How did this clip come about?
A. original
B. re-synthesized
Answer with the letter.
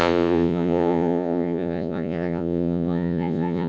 B